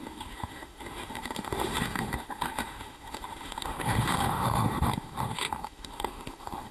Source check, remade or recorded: remade